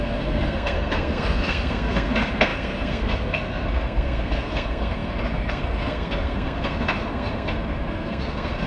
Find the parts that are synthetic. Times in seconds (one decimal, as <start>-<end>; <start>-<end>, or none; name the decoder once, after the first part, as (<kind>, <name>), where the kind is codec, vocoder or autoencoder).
0.0-8.7 (codec, SNAC)